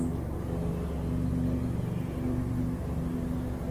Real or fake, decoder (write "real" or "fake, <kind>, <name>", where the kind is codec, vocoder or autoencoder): real